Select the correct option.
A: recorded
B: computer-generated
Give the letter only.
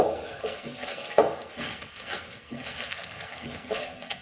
B